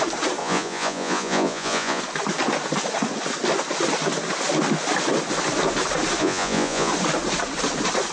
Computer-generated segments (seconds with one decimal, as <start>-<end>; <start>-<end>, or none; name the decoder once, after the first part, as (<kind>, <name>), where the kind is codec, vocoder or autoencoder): 0.4-2.0 (vocoder, Vocos); 6.2-6.9